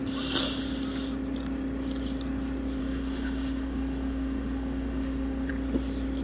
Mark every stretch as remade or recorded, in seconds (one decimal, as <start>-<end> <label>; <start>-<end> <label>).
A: 0.0-2.8 recorded; 2.8-5.5 remade; 5.5-6.2 recorded